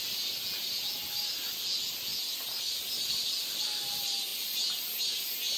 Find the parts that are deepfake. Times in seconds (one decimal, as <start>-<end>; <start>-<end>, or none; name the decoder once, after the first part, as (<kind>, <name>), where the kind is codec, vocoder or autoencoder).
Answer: none